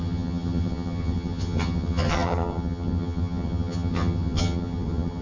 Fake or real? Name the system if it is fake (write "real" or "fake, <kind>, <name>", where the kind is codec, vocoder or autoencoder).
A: fake, vocoder, HiFi-GAN